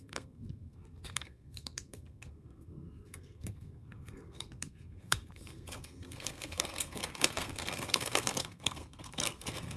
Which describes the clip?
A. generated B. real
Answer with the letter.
A